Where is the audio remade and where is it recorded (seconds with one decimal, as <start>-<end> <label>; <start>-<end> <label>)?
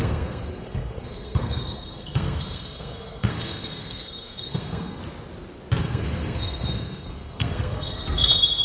0.0-5.0 remade; 5.0-5.8 recorded; 5.8-8.6 remade